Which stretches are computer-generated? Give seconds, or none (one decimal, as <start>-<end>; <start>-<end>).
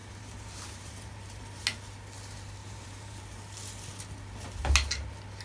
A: 0.0-1.6; 2.6-3.2